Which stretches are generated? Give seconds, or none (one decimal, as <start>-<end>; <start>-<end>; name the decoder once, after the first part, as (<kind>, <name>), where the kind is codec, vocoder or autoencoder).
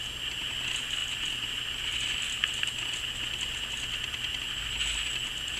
none